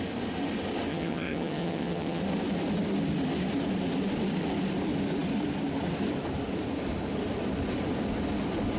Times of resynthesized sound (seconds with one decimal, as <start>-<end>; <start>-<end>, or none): 0.9-2.2